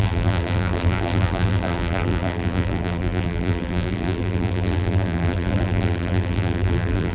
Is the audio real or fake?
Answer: fake